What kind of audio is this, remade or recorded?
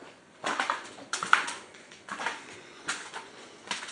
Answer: remade